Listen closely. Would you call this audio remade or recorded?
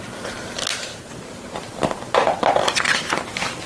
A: remade